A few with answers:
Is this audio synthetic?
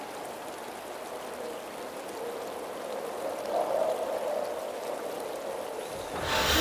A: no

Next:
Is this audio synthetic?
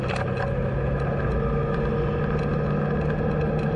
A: no